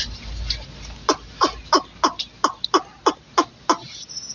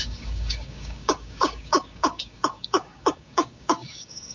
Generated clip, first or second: second